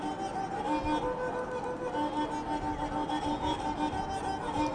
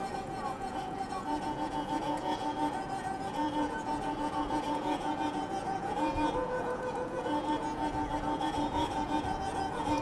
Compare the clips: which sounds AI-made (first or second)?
second